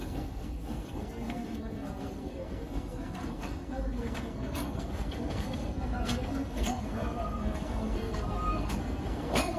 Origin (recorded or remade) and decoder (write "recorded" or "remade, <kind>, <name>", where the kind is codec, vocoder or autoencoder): remade, codec, SNAC